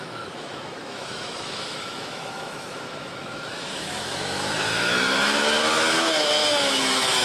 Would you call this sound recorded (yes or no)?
no